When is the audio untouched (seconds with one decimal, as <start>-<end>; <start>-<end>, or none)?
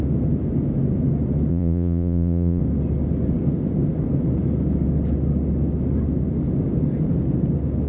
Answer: 0.0-1.5; 2.6-7.9